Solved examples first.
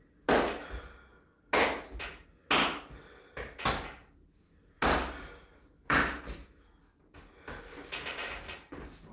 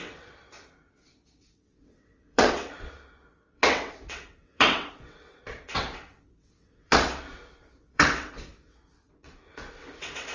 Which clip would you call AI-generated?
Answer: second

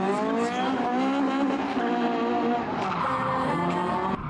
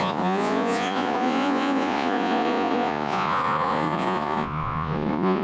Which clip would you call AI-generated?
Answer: second